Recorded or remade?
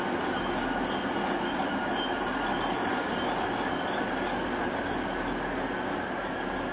recorded